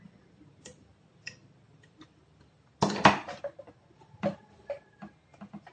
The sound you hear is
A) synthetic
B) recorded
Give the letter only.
B